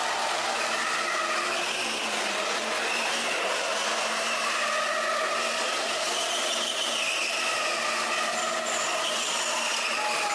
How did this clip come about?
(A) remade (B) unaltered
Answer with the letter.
B